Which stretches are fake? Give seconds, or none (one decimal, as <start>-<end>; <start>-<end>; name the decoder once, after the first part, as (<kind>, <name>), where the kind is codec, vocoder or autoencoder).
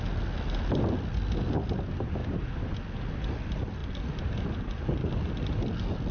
none